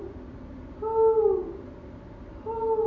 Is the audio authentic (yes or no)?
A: yes